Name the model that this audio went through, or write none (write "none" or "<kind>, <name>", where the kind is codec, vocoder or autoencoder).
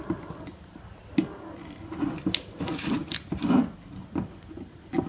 none